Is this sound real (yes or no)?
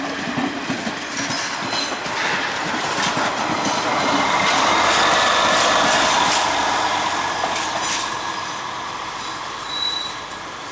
no